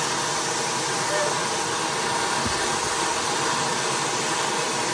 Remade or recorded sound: recorded